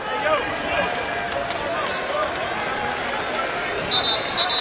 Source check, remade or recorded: recorded